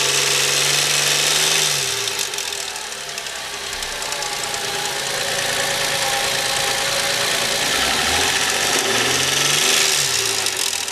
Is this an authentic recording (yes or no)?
yes